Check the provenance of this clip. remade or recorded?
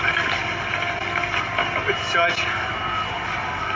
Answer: recorded